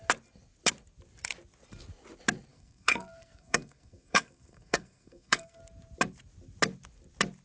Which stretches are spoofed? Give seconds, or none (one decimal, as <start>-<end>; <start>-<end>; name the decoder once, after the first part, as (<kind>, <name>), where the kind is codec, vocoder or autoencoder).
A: 2.5-5.6 (codec, SNAC)